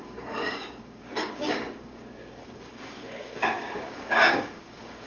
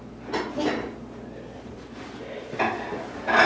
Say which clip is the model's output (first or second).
first